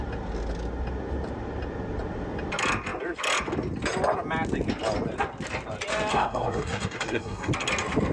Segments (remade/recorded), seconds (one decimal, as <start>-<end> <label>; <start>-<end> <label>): 0.0-6.1 recorded; 6.1-7.5 remade; 7.5-8.1 recorded